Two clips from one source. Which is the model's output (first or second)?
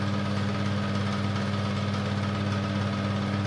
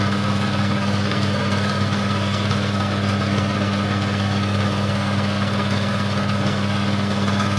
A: second